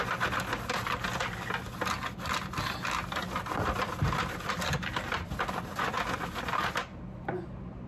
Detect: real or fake real